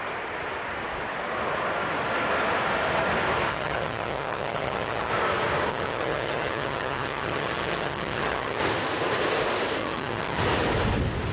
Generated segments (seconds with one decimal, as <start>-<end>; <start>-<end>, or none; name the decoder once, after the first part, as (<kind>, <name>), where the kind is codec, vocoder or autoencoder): 3.5-5.1 (vocoder, HiFi-GAN); 5.7-8.6; 9.8-10.4